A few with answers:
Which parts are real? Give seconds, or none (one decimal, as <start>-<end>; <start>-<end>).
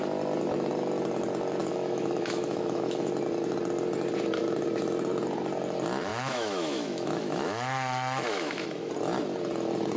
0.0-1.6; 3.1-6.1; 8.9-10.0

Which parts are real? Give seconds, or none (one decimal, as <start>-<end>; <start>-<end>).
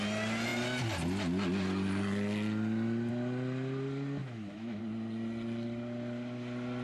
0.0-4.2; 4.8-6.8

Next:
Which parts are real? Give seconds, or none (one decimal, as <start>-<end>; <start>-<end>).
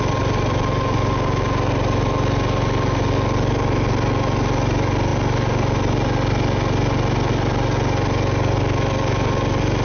0.0-9.8